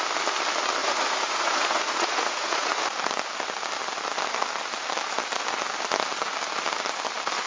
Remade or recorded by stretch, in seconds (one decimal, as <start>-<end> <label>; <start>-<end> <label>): 0.0-0.8 recorded; 0.8-2.8 remade; 2.8-7.5 recorded